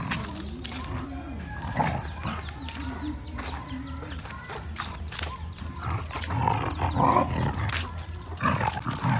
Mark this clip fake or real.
real